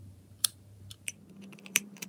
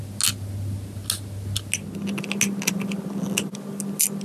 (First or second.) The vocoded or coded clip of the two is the first